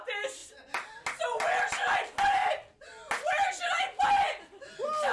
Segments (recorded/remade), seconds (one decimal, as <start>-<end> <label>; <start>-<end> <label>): 0.0-5.1 recorded